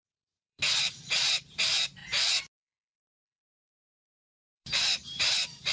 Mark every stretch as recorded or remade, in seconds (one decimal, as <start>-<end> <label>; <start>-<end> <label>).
0.0-2.0 remade; 2.0-4.0 recorded; 4.0-5.7 remade